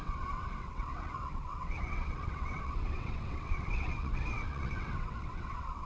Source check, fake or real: fake